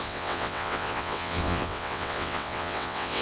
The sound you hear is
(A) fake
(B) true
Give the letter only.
A